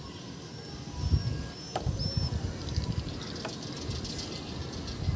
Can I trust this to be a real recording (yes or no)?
yes